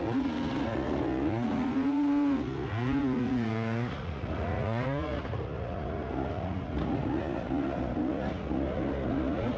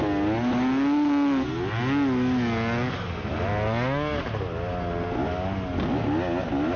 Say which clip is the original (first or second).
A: second